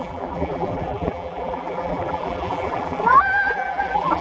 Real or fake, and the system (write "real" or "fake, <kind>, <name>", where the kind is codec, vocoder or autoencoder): fake, vocoder, BigVGAN v2